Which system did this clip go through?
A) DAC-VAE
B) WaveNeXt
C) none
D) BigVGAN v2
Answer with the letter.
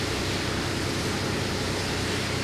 C